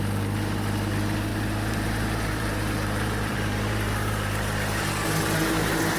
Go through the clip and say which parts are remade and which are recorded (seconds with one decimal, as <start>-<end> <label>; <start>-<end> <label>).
0.0-1.3 recorded; 1.3-4.9 remade; 4.9-6.0 recorded